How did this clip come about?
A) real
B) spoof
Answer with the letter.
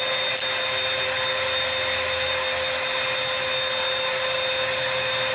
A